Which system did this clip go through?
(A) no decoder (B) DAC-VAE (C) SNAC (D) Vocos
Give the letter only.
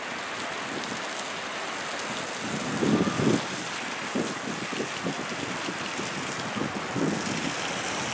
A